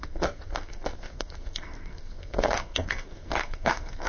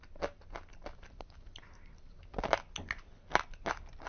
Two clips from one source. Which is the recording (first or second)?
second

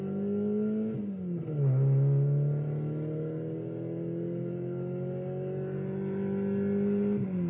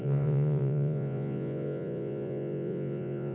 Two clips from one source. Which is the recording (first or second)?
first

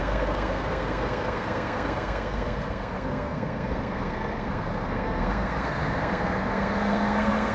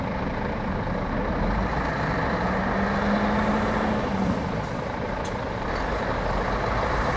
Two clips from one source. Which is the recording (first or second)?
second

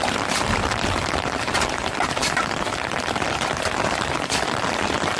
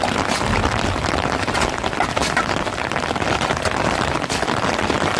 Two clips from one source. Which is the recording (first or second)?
second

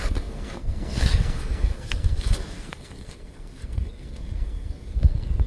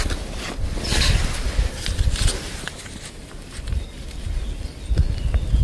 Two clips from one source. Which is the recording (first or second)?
second